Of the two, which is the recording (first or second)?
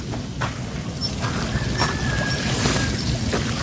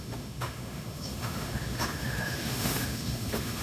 first